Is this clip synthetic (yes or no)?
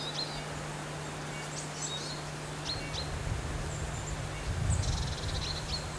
no